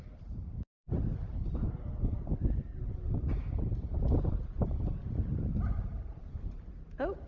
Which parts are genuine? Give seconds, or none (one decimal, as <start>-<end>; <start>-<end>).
0.0-7.3

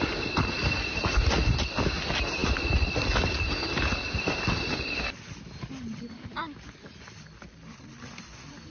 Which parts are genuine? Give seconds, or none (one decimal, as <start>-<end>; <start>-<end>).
0.0-8.7

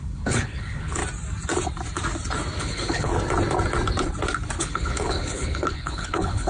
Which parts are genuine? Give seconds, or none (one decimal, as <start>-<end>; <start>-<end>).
1.0-2.6; 3.1-4.6

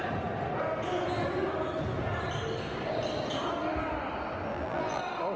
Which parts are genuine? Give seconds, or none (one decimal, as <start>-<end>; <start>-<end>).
0.0-4.5; 5.0-5.4

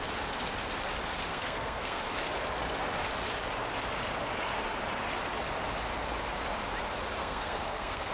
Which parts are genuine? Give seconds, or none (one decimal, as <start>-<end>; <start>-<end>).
0.0-1.3; 2.0-7.2